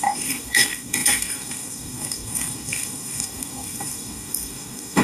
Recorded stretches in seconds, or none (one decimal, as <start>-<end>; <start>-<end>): none